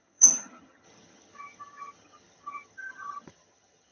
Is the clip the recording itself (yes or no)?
no